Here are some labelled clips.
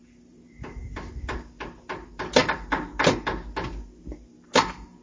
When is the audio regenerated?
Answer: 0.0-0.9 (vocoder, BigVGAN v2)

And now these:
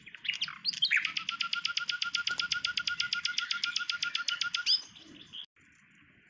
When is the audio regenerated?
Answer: none

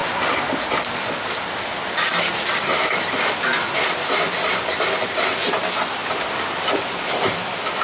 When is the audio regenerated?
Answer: 2.5-5.4 (vocoder, BigVGAN v2); 6.0-6.9